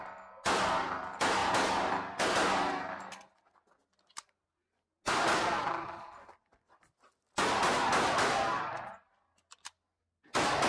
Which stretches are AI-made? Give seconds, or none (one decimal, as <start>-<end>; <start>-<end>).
none